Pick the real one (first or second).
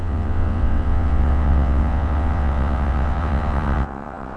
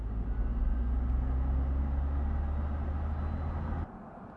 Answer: second